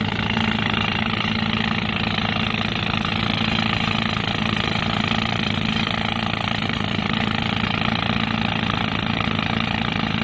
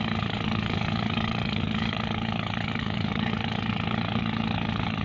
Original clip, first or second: first